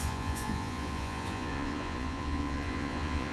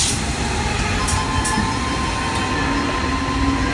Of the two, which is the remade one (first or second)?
first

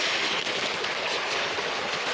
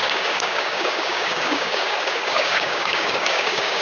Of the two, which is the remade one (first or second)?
second